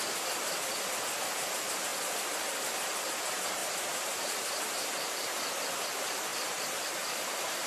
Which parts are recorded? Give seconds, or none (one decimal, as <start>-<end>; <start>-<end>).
0.0-3.6; 5.1-6.3